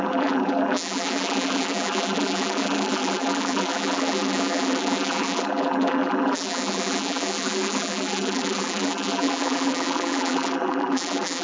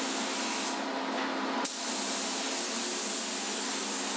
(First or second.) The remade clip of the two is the first